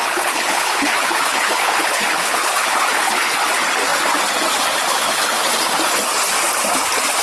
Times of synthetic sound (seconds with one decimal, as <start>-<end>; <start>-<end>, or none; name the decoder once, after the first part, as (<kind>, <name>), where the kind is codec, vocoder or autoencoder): 0.0-3.5 (codec, HILCodec); 4.9-5.4